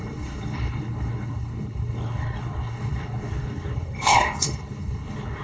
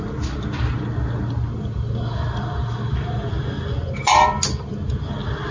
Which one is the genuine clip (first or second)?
second